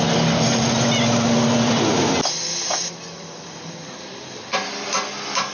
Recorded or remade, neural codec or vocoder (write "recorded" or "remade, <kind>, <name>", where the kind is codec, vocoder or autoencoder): recorded